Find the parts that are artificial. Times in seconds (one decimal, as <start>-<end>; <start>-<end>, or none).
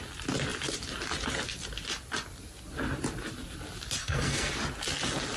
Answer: 4.0-4.5